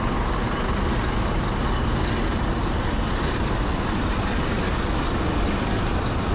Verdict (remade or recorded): recorded